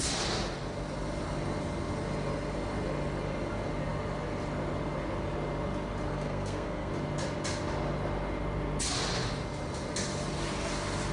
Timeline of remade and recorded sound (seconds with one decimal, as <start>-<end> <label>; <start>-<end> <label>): 0.0-6.1 recorded; 6.1-6.9 remade; 6.9-11.1 recorded